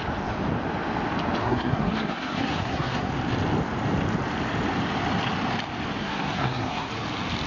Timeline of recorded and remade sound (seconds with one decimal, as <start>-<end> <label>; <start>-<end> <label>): 0.0-1.4 recorded; 1.4-3.1 remade; 3.1-6.0 recorded; 6.0-6.9 remade; 6.9-7.5 recorded